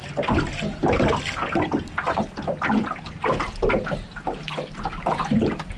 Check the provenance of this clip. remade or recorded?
recorded